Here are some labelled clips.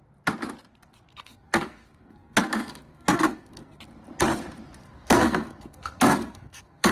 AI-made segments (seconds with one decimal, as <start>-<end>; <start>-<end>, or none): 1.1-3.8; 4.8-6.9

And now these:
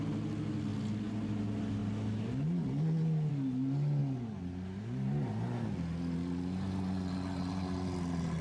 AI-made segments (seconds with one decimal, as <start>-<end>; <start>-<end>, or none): none

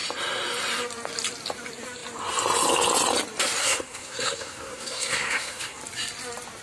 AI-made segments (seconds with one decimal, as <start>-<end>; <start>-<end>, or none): 3.6-5.8